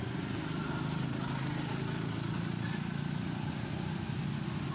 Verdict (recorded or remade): recorded